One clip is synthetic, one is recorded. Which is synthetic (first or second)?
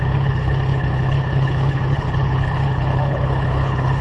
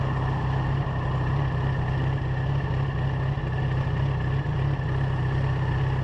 first